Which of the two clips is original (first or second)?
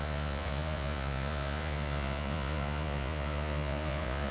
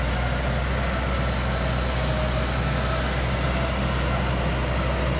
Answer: second